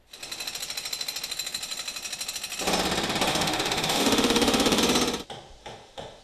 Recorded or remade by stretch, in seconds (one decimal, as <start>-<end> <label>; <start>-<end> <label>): 0.0-3.3 recorded; 3.3-4.8 remade; 4.8-5.6 recorded; 5.6-6.2 remade